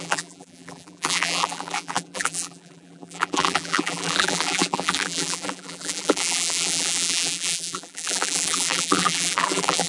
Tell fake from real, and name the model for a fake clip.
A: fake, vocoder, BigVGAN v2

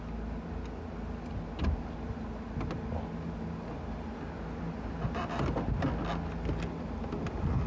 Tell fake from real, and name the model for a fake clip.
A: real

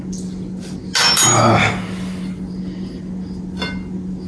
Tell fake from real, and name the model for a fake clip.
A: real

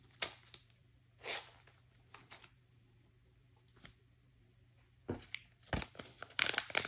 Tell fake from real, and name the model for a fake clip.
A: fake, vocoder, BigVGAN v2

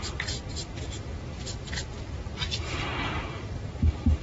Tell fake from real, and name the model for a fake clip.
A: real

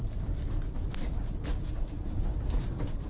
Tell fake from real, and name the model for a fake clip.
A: fake, vocoder, BigVGAN v2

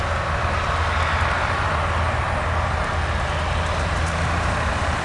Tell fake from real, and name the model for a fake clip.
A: real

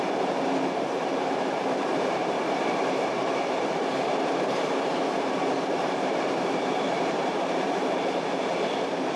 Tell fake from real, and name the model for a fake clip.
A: fake, vocoder, BigVGAN v2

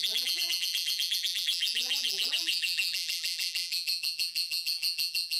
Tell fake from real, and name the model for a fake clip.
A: fake, vocoder, BigVGAN v2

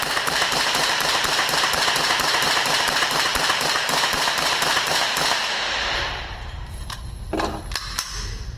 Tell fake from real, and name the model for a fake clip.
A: fake, vocoder, BigVGAN v2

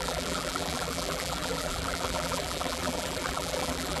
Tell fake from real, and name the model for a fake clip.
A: fake, vocoder, BigVGAN v2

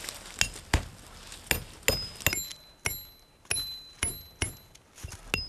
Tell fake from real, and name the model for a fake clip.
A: real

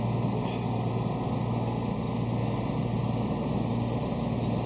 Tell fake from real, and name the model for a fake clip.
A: real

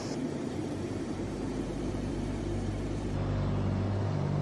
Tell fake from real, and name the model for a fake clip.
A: fake, vocoder, BigVGAN v2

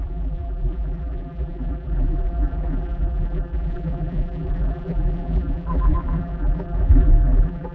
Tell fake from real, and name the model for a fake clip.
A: fake, vocoder, BigVGAN v2